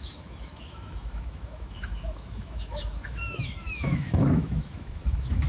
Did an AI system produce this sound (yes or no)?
yes